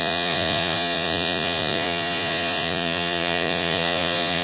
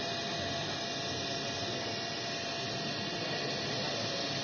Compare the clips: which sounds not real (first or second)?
first